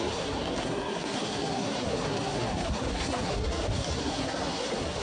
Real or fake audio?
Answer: fake